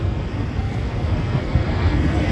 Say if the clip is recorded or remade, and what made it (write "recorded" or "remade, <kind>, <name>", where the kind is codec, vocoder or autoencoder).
remade, codec, SNAC